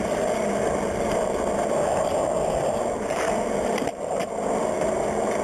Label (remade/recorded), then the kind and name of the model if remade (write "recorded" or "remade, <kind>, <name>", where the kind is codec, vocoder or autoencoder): recorded